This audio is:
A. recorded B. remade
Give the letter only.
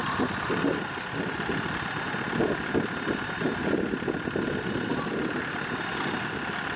A